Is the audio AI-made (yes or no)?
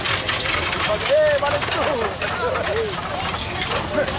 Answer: no